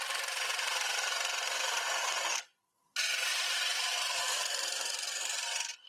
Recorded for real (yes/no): no